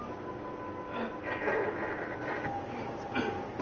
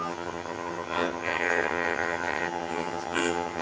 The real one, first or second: first